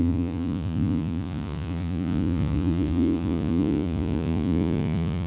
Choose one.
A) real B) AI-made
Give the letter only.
B